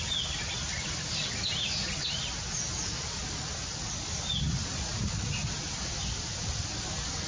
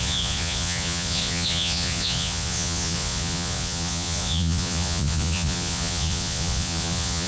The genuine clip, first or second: first